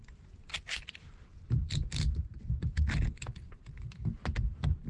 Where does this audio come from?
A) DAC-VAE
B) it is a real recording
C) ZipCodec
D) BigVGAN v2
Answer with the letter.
B